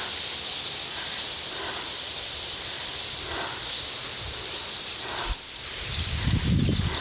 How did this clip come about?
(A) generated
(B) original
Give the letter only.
A